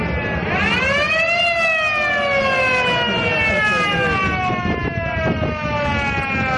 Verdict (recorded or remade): recorded